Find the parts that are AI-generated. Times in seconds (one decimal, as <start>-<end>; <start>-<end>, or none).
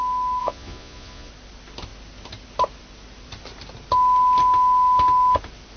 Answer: 0.4-1.3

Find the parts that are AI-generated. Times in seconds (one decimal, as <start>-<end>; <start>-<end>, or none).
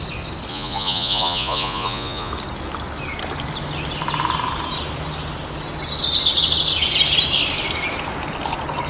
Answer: 0.5-2.3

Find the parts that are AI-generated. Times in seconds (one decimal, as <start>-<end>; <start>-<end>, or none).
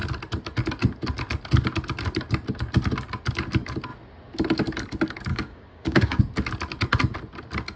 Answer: 5.3-6.2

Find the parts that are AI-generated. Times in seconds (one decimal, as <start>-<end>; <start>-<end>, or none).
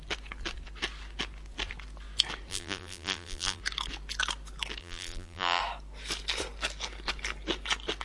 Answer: 2.5-3.6; 4.8-5.6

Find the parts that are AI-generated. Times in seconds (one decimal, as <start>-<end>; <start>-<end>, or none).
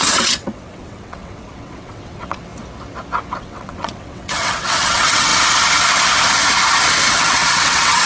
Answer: 0.0-2.5; 3.4-5.3; 7.1-8.1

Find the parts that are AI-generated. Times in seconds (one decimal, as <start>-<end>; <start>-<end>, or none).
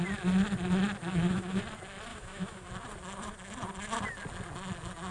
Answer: 1.1-1.6; 2.1-2.7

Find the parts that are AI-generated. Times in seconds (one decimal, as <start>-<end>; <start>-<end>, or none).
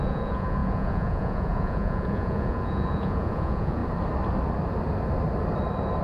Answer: 0.0-3.8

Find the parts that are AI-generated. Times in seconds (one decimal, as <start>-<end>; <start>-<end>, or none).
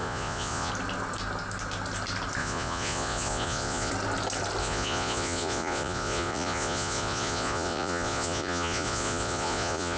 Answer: 0.0-0.7; 2.4-3.9; 4.6-10.0